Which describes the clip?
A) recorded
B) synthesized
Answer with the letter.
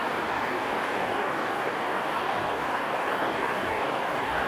B